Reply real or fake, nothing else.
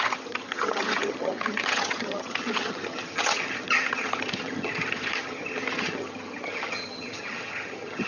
fake